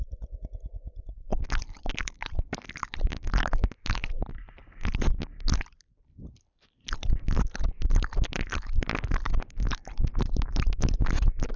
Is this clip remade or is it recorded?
remade